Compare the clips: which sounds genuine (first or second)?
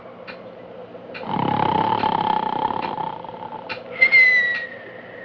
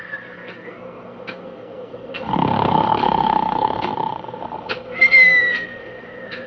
first